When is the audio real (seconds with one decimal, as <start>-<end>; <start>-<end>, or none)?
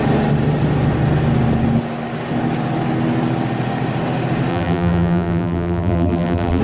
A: 0.0-4.5